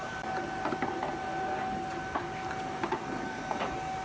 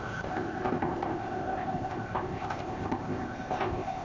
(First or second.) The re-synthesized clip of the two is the second